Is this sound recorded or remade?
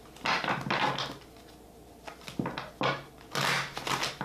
recorded